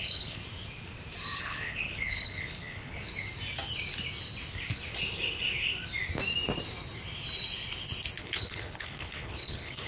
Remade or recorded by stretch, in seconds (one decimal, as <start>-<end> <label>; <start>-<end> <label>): 0.0-0.4 remade; 0.4-1.4 recorded; 1.4-3.1 remade; 3.1-8.2 recorded; 8.2-9.9 remade